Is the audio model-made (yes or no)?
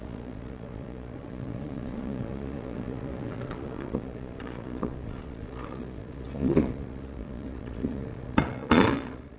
yes